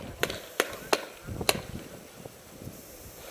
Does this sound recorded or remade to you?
recorded